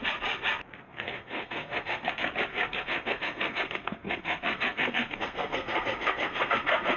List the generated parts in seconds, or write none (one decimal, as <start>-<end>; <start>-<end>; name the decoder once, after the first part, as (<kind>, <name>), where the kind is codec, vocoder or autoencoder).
0.8-2.1 (codec, SNAC); 2.5-7.0